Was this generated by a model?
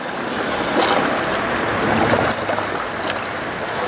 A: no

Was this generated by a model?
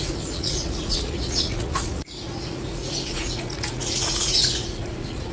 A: yes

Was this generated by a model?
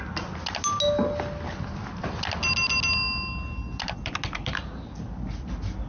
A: no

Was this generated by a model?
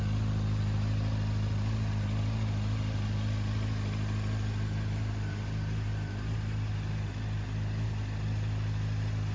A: no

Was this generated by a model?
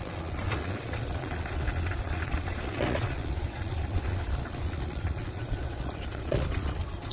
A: yes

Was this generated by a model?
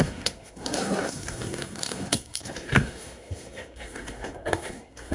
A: yes